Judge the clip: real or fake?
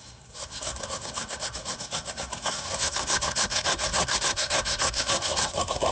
fake